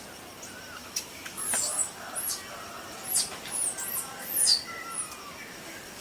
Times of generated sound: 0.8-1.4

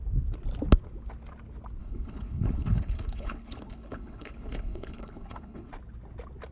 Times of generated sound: 1.8-5.7